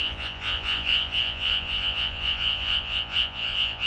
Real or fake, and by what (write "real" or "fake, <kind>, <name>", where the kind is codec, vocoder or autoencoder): fake, vocoder, Vocos